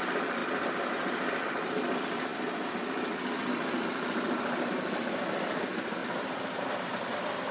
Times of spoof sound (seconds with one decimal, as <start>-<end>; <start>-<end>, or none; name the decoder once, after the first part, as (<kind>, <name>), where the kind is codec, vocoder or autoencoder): none